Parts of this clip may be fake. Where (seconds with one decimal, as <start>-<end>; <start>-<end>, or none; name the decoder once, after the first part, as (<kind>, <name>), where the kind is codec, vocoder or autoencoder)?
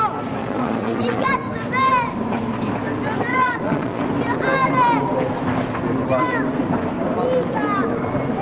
0.4-1.3 (vocoder, Vocos); 3.3-4.0